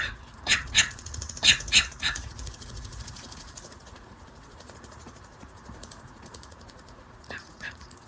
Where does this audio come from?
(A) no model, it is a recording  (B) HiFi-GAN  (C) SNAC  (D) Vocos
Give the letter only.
D